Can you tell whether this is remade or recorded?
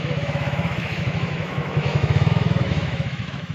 remade